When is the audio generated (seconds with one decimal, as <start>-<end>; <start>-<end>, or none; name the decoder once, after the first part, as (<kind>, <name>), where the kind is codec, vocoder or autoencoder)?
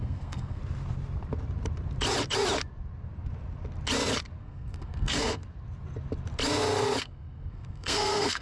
0.0-0.6 (codec, SNAC); 4.4-5.4; 7.0-8.4